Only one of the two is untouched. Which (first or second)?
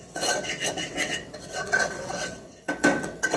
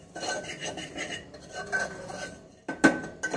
second